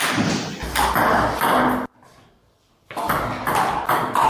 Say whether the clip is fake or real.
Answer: real